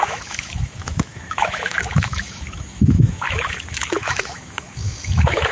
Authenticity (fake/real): fake